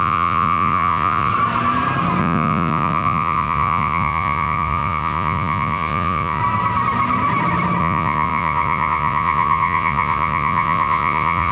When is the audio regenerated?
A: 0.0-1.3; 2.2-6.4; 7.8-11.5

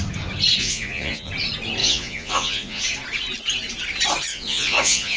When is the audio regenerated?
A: 0.6-1.3; 1.8-2.8; 4.3-5.2

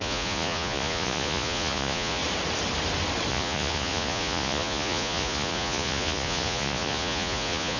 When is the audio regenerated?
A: 0.0-2.2; 3.3-7.8

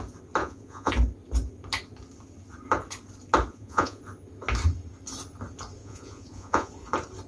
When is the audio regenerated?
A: 0.4-0.9; 3.5-4.0; 5.8-6.7

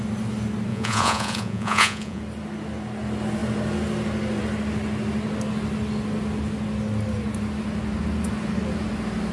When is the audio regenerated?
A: 0.7-2.2

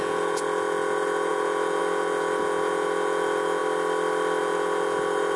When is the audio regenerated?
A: 0.0-3.6; 4.4-5.4

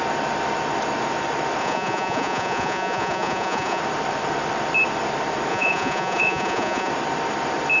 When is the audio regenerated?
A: 1.6-3.8; 5.5-6.9